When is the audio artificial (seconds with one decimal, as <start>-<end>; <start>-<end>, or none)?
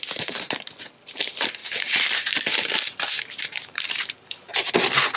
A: 1.6-4.7